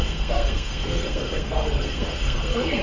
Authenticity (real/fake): fake